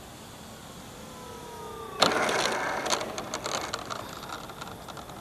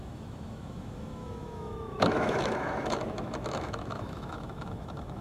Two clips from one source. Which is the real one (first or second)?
first